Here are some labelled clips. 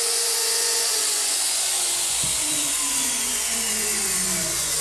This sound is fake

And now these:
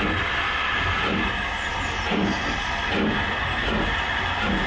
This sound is real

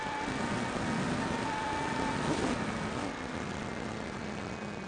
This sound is real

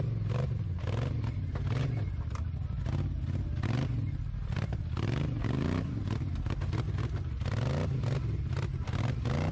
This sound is real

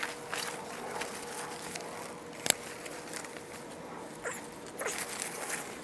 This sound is real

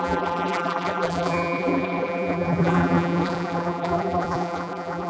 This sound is fake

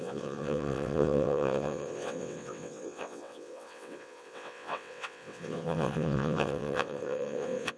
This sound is fake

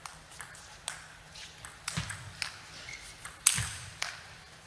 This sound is real